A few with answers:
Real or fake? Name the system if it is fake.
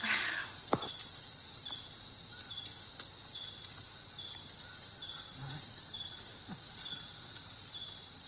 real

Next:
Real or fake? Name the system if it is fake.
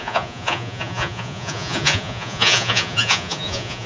fake, vocoder, Vocos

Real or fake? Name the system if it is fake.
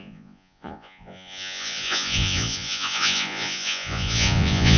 fake, vocoder, Vocos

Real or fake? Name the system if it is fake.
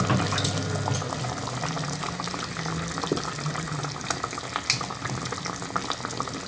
real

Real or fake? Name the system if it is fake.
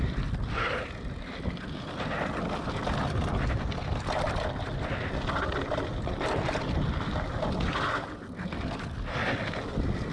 real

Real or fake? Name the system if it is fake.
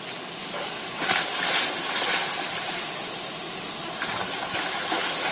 real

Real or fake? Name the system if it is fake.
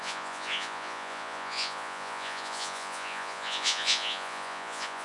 fake, vocoder, Vocos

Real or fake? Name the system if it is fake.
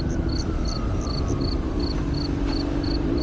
real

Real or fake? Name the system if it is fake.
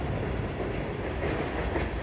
real